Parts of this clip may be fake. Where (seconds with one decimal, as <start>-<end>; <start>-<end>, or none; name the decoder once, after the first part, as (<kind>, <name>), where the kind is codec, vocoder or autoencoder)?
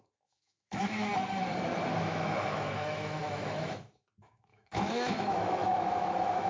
0.0-1.1 (autoencoder, DAC-VAE); 2.0-6.5